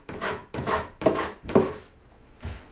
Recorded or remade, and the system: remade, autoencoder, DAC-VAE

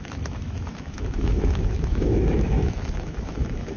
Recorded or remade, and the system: remade, autoencoder, DAC-VAE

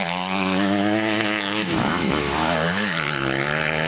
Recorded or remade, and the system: remade, autoencoder, DAC-VAE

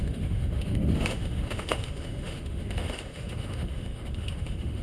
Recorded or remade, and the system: remade, autoencoder, DAC-VAE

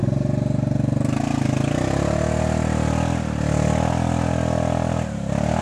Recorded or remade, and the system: recorded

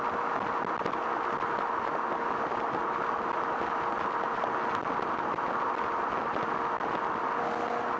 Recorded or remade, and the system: recorded